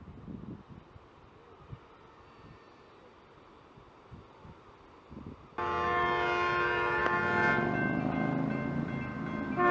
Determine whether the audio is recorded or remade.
recorded